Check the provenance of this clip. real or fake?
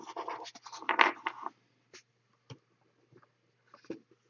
real